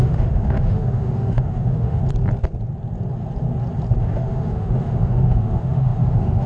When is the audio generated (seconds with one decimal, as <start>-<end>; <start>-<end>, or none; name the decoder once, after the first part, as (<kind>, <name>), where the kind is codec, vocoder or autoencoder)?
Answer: 0.0-2.0 (autoencoder, DAC-VAE); 4.0-6.5